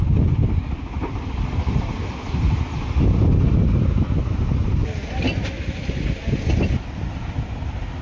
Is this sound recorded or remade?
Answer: recorded